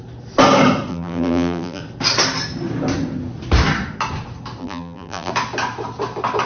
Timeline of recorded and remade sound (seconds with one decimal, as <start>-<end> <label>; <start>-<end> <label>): 0.0-0.9 recorded; 0.9-1.8 remade; 1.8-4.6 recorded; 4.6-5.3 remade; 5.3-6.5 recorded